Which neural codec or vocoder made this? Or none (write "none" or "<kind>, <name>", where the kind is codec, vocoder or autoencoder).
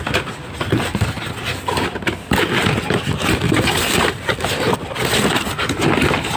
none